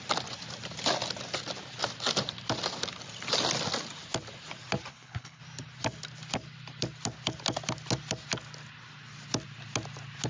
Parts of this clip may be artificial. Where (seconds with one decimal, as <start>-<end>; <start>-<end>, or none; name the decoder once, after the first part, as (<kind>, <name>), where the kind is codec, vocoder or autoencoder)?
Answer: 4.9-5.4 (codec, HILCodec)